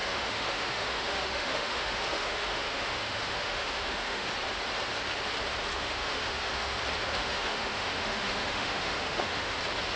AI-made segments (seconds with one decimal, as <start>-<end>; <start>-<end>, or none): 0.0-4.3; 5.7-6.8; 7.2-9.6